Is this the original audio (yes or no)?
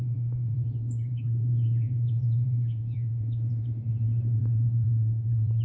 no